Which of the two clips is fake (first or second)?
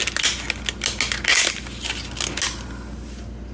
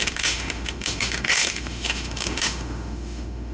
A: second